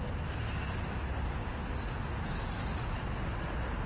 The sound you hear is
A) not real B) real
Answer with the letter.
B